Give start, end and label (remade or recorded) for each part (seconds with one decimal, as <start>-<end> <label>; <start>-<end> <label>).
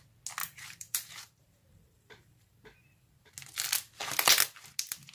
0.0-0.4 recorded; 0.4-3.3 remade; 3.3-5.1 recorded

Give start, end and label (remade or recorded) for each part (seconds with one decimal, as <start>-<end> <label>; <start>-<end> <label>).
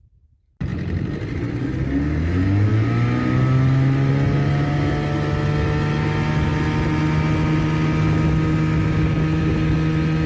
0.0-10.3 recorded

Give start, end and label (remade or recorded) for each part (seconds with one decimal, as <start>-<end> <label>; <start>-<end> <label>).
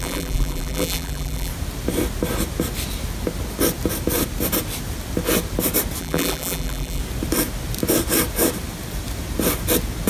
0.0-1.5 remade; 1.5-6.0 recorded; 6.0-7.0 remade; 7.0-10.1 recorded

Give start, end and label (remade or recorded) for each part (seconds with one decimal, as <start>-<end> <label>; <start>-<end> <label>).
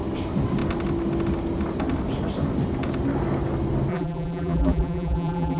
0.0-3.9 recorded; 3.9-5.6 remade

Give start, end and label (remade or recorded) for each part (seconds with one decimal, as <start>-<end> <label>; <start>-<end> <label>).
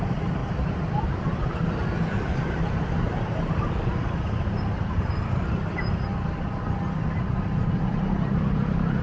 0.0-9.0 recorded